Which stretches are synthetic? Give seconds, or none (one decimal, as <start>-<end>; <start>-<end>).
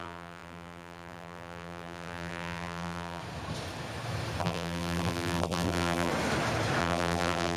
0.0-3.2; 4.4-6.1; 6.8-7.6